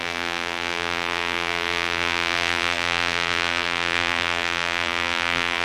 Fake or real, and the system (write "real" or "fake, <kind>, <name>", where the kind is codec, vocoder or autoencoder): fake, vocoder, BigVGAN v2